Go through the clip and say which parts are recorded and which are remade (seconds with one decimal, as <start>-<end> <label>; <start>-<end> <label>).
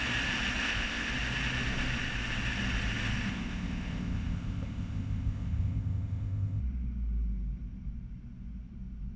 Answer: 0.0-0.6 recorded; 0.6-1.1 remade; 1.1-3.3 recorded; 3.3-6.6 remade; 6.6-9.2 recorded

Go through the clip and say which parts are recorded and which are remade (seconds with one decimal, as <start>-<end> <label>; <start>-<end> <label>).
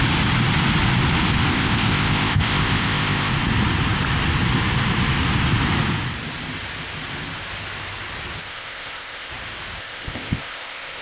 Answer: 0.0-1.5 recorded; 1.5-3.3 remade; 3.3-8.4 recorded; 8.4-9.3 remade; 9.3-9.8 recorded; 9.8-11.0 remade